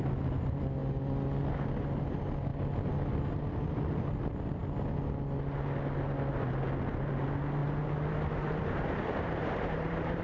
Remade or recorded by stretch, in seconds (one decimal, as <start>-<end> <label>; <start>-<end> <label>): 0.0-7.6 recorded; 7.6-10.2 remade